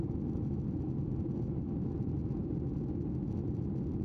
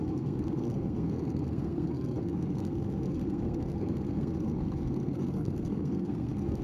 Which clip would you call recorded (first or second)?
first